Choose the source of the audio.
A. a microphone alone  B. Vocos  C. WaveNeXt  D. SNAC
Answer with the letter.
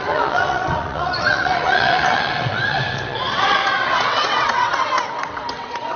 C